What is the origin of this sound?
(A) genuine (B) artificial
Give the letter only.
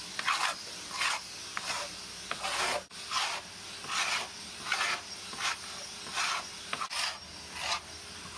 A